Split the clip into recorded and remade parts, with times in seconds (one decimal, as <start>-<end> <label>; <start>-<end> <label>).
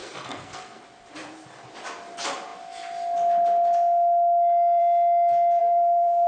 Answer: 0.0-0.8 remade; 0.8-5.6 recorded; 5.6-6.3 remade